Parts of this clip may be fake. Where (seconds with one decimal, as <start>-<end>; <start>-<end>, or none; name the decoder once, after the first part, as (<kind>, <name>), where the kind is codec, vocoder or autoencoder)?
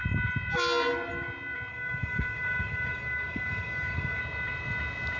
1.7-4.2 (codec, DAC)